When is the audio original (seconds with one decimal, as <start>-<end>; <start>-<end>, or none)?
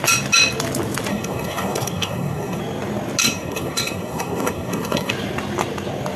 0.0-1.1; 2.6-3.2; 5.1-6.2